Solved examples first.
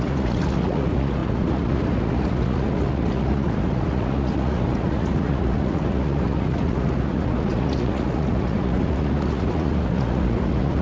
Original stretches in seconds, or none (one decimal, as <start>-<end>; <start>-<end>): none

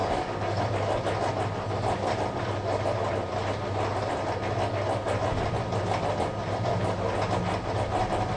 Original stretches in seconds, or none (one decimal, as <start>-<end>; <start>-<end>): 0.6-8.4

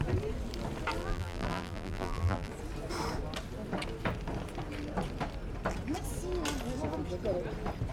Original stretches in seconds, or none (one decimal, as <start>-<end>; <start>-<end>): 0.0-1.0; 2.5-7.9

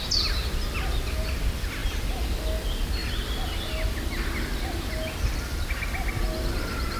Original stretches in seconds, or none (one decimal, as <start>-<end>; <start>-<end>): 0.0-7.0

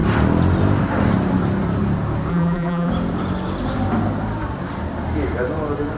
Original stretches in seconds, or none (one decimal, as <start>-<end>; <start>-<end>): 0.0-2.3; 2.9-6.0

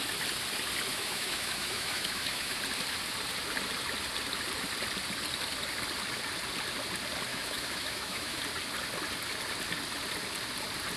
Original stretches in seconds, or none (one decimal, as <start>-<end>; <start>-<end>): 0.0-0.9; 2.6-7.3; 8.4-11.0